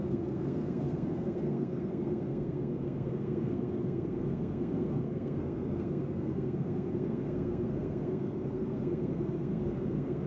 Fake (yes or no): yes